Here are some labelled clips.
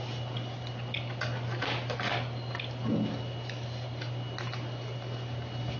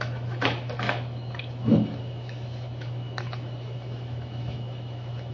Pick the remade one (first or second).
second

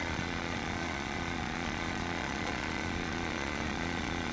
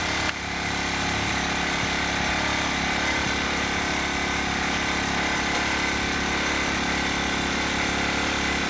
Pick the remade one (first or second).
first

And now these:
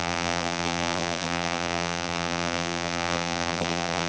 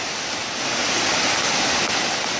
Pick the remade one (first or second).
first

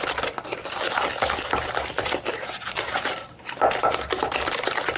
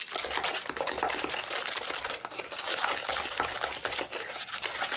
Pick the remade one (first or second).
first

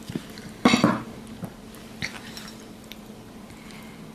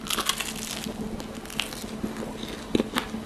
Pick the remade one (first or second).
first